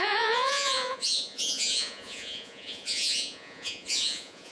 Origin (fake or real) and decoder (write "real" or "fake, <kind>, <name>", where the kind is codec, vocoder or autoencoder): fake, vocoder, Vocos